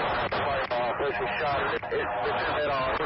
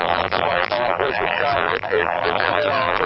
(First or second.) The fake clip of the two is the second